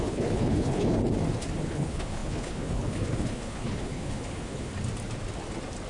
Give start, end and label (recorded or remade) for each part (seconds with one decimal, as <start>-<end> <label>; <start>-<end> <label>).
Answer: 0.0-1.0 remade; 1.0-1.6 recorded; 1.6-4.7 remade; 4.7-5.9 recorded